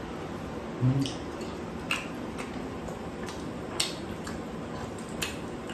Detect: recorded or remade recorded